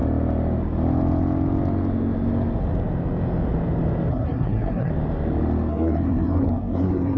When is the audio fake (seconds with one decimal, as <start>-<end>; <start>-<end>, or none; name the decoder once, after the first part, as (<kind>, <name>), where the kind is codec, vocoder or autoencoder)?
4.1-4.9 (codec, SNAC); 5.7-7.2